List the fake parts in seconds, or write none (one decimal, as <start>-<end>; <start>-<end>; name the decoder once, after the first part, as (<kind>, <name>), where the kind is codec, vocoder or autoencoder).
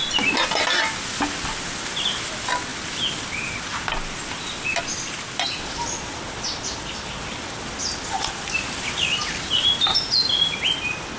none